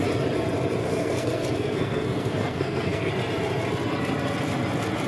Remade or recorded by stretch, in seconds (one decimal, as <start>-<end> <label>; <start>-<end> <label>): 0.0-0.8 recorded; 0.8-3.1 remade; 3.1-5.1 recorded